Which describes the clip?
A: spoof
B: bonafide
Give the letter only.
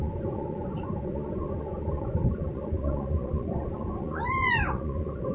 A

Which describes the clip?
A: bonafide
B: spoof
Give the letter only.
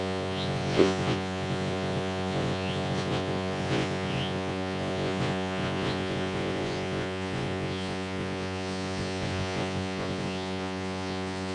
B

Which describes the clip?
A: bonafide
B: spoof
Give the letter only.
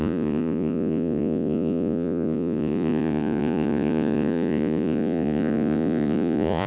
B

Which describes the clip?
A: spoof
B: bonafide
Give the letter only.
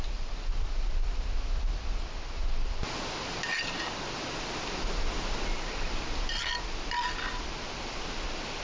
B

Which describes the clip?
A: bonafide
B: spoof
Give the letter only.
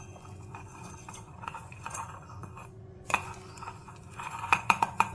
B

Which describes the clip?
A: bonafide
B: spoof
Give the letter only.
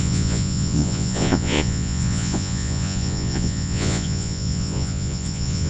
B